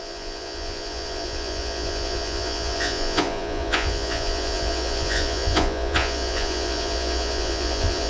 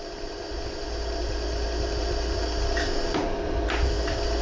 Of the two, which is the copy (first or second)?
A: first